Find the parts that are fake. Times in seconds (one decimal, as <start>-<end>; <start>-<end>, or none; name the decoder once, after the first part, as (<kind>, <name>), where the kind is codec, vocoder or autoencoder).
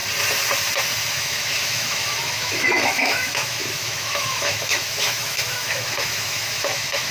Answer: 1.1-7.1 (autoencoder, DAC-VAE)